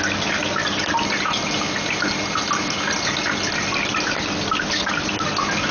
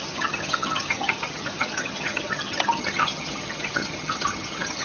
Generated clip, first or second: second